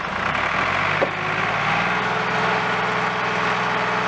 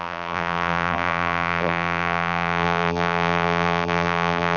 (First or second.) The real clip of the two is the first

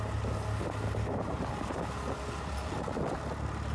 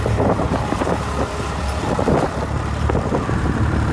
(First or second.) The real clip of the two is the first